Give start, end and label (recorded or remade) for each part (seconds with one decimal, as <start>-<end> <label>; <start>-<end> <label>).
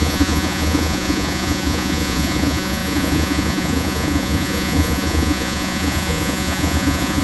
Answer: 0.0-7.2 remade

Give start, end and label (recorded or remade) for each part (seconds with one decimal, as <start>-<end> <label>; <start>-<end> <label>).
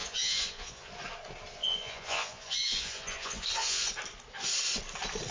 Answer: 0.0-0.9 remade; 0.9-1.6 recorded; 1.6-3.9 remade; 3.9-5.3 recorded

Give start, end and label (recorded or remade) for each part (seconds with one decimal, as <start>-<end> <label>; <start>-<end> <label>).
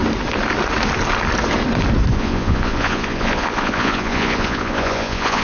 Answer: 0.0-2.1 recorded; 2.1-5.4 remade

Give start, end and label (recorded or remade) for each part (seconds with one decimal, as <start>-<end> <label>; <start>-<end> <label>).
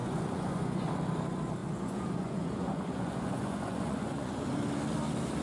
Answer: 0.0-0.9 remade; 0.9-1.6 recorded; 1.6-4.4 remade; 4.4-5.4 recorded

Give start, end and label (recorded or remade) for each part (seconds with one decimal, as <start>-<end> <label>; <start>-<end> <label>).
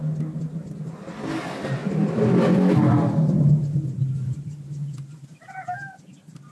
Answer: 0.0-6.5 recorded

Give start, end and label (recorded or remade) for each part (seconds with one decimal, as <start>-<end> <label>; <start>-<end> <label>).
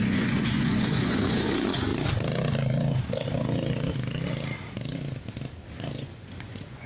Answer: 0.0-1.9 remade; 1.9-5.9 recorded; 5.9-6.9 remade